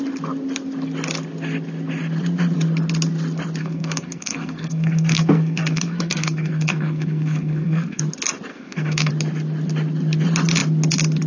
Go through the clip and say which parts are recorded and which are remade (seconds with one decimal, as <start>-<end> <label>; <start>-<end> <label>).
0.0-3.6 recorded; 3.6-8.0 remade; 8.0-8.5 recorded; 8.5-9.1 remade; 9.1-11.3 recorded